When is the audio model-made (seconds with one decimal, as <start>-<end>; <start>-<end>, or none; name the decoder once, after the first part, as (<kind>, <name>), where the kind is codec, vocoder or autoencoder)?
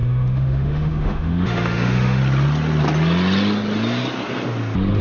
0.0-2.2 (autoencoder, DAC-VAE)